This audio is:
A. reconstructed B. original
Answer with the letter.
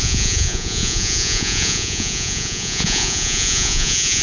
A